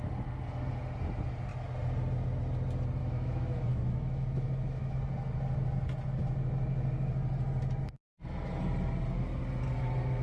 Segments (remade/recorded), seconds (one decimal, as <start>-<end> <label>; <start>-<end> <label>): 0.0-3.0 recorded; 3.0-4.9 remade; 4.9-10.2 recorded